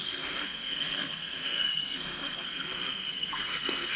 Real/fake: fake